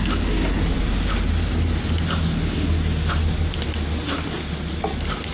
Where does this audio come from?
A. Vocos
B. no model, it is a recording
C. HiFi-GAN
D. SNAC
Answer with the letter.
B